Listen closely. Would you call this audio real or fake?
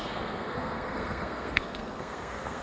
fake